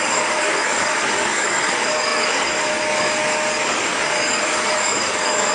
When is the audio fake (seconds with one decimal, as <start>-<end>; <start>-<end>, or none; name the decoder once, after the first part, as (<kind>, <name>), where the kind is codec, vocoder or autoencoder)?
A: 0.0-5.5 (codec, DAC)